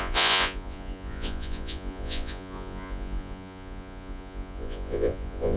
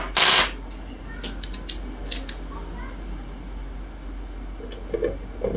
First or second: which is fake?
first